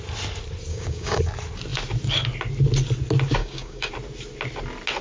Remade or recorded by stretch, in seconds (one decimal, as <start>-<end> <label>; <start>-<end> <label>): 0.0-0.7 recorded; 0.7-1.2 remade; 1.2-3.4 recorded; 3.4-3.9 remade; 3.9-5.0 recorded